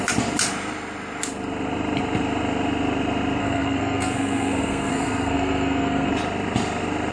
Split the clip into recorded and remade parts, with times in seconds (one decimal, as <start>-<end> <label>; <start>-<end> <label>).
0.0-3.4 recorded; 3.4-6.1 remade; 6.1-7.1 recorded